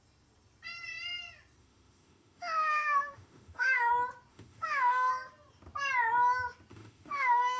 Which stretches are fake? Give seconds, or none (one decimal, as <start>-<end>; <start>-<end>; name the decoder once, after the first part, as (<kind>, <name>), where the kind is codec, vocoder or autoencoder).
1.6-3.9 (autoencoder, DAC-VAE); 4.3-5.1; 6.7-7.6